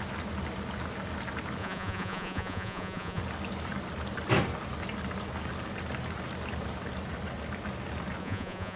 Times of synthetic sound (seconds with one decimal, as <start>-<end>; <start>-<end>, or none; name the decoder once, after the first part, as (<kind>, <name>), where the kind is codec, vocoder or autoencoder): 1.6-3.2 (vocoder, Vocos); 8.2-8.8